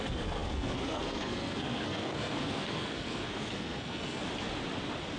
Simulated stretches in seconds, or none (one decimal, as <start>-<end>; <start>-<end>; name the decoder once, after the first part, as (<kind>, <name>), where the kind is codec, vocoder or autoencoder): 0.0-4.2 (codec, SNAC)